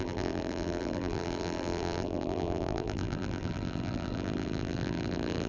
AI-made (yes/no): yes